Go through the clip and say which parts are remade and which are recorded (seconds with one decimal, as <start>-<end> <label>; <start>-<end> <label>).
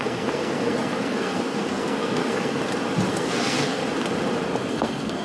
0.0-2.6 remade; 2.6-3.1 recorded; 3.1-3.8 remade; 3.8-4.7 recorded; 4.7-5.2 remade